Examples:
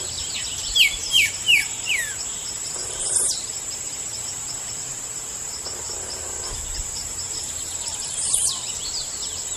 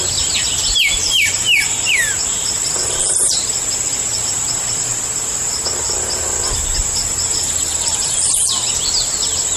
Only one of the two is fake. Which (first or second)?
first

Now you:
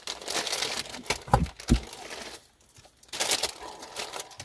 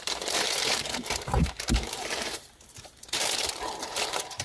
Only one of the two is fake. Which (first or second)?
second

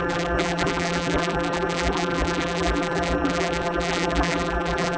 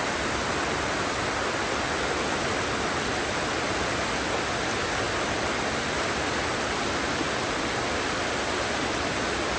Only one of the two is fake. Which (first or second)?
first